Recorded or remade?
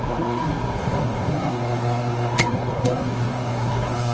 remade